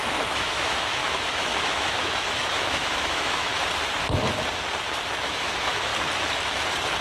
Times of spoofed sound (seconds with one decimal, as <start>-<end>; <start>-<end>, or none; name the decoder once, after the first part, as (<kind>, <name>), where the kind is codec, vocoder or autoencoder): 0.0-3.5 (autoencoder, DAC-VAE); 5.2-5.9